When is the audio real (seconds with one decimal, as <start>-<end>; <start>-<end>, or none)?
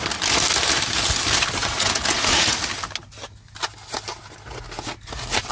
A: 0.0-1.6; 2.6-5.5